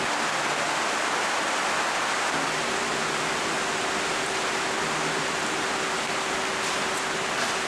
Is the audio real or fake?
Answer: real